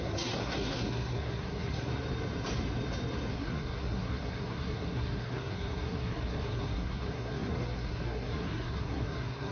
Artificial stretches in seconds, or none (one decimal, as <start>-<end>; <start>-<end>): 0.0-1.9; 3.3-9.5